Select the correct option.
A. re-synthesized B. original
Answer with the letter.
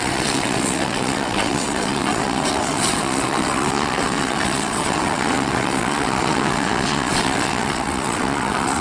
A